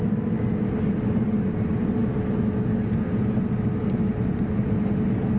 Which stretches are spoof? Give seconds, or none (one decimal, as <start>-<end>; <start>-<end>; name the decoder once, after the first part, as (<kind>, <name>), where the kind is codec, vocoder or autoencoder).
none